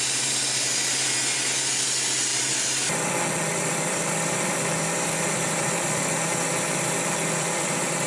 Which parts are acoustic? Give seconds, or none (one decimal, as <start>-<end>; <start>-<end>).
0.0-2.3; 3.1-3.5